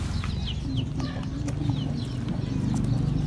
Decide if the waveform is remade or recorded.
recorded